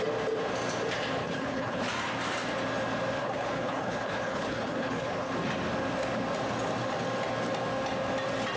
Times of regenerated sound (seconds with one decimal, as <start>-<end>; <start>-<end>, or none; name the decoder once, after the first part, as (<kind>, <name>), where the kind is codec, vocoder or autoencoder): 1.2-1.8 (codec, HILCodec); 3.2-5.3